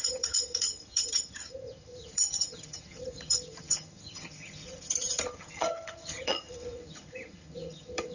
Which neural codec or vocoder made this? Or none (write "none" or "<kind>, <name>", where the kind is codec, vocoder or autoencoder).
vocoder, HiFi-GAN